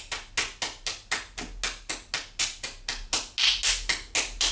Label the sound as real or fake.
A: real